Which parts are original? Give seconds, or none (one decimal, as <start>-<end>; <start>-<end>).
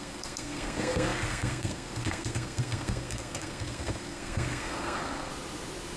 5.3-6.0